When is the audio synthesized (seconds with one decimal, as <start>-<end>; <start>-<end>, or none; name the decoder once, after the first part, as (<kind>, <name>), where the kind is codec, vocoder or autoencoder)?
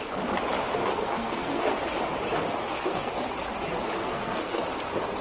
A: 0.7-1.8 (codec, SNAC); 2.6-3.1; 4.0-4.6